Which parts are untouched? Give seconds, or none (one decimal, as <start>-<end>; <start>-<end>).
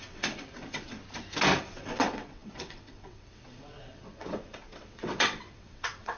1.0-1.6